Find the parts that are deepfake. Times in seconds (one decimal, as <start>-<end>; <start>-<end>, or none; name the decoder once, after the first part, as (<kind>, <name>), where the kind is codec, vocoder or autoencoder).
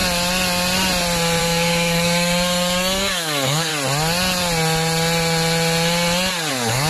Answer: 1.4-3.7 (codec, DAC); 6.5-6.9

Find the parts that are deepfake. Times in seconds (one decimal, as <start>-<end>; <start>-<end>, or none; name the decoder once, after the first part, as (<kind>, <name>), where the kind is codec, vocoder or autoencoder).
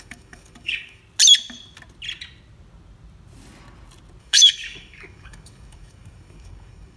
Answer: 0.0-1.0 (codec, DAC); 4.2-7.0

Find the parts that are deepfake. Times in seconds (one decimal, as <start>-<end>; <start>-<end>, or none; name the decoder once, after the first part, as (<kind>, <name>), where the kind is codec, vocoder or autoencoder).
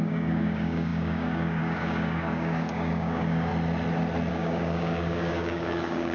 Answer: 0.0-3.5 (codec, DAC); 4.3-6.1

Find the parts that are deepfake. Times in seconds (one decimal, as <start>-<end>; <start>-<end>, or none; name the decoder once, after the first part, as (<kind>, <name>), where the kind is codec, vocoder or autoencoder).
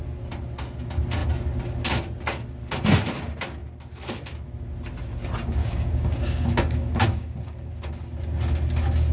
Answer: 5.6-7.7 (codec, DAC)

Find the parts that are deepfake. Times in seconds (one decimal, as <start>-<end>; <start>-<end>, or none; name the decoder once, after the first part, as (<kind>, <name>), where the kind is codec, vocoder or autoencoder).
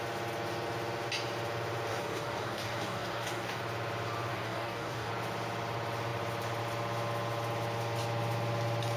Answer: 1.9-3.6 (codec, DAC); 4.3-5.1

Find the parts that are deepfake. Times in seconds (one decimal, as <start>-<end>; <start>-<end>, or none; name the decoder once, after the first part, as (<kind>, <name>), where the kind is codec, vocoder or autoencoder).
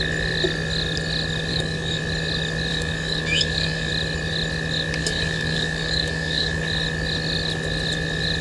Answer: 1.5-2.0 (codec, DAC); 2.7-3.9; 5.0-6.6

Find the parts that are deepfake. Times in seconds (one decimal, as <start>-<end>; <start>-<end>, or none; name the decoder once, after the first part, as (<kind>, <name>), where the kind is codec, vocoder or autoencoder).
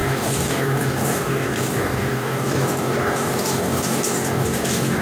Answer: 0.0-5.0 (codec, DAC)